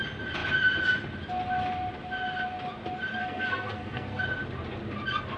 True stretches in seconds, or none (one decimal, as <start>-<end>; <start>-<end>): 0.0-3.2; 4.2-5.4